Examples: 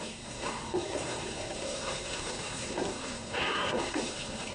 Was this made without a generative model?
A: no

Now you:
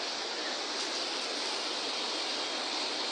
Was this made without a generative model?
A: yes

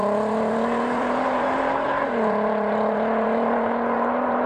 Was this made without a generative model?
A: no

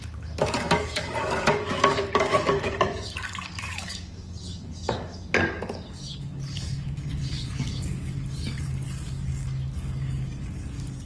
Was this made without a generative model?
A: no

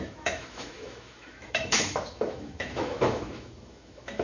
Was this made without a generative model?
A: no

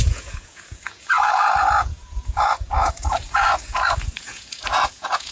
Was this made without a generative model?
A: no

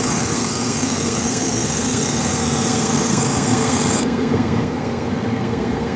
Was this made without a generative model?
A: no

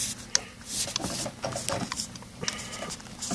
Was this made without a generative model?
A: yes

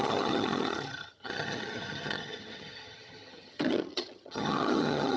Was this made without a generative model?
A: no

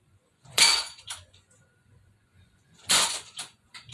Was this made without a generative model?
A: no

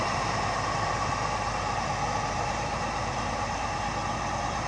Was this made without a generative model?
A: yes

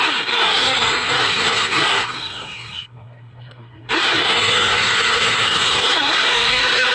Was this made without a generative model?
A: no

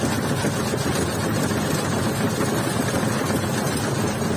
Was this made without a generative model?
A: yes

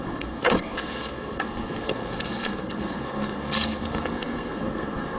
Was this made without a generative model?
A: no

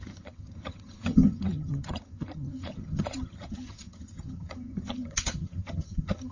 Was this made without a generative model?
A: no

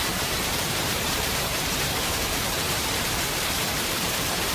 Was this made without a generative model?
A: no